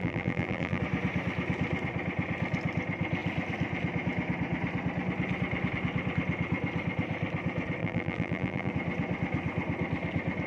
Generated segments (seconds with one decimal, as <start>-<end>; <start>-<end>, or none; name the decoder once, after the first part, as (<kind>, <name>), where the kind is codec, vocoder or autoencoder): 0.0-0.8 (vocoder, BigVGAN v2); 7.8-8.7